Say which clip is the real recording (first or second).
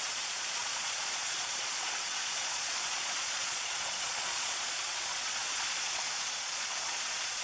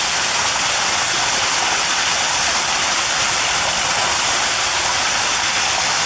second